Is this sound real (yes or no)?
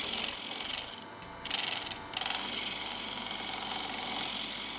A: yes